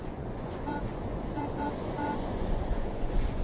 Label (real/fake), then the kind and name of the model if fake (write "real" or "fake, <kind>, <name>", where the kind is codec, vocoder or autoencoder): fake, vocoder, Vocos